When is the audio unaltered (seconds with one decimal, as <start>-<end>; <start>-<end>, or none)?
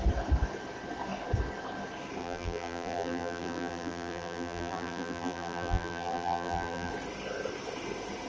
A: 0.0-2.2; 6.9-8.3